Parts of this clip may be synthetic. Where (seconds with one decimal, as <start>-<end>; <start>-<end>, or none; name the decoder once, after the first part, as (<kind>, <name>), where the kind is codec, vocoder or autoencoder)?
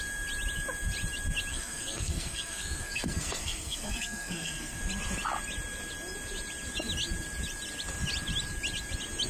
1.5-4.8 (codec, SNAC)